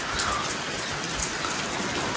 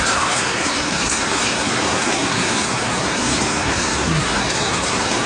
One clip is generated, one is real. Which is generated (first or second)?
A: second